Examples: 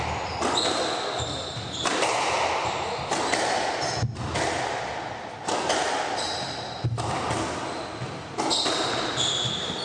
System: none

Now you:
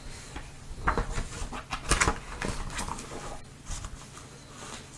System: none